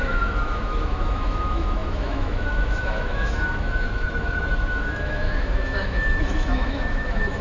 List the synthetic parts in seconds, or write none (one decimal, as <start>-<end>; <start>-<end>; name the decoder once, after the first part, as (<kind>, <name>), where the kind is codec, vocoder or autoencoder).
0.0-7.4 (autoencoder, DAC-VAE)